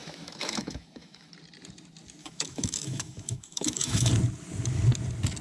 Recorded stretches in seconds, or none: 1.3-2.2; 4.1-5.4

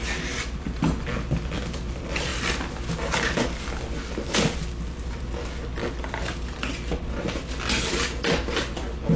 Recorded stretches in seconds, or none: 0.0-9.2